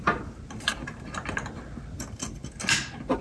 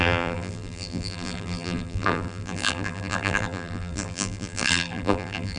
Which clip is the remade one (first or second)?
second